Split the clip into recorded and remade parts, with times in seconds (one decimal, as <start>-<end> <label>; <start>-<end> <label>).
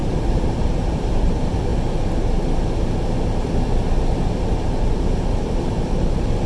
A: 0.0-1.7 remade; 1.7-4.3 recorded; 4.3-6.5 remade